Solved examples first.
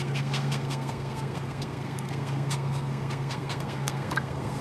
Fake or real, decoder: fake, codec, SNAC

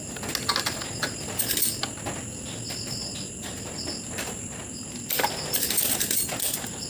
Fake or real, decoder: real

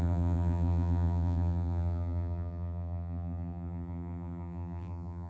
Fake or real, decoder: fake, vocoder, BigVGAN v2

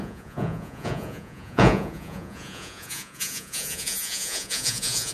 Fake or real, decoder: fake, vocoder, Vocos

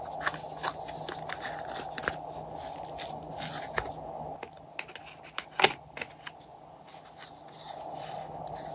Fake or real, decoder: real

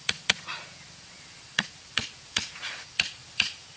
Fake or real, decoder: fake, vocoder, Vocos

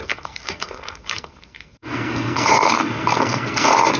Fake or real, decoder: fake, codec, SNAC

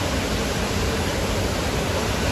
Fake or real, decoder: real